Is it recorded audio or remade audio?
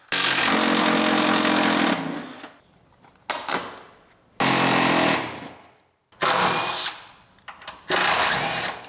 recorded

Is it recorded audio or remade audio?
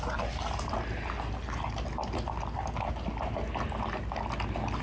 recorded